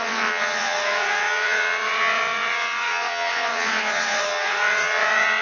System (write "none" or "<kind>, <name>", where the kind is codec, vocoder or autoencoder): vocoder, WaveNeXt